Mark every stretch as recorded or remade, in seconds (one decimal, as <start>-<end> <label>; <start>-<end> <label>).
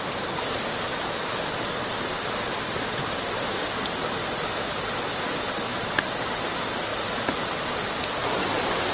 0.0-6.9 recorded; 6.9-7.4 remade; 7.4-8.9 recorded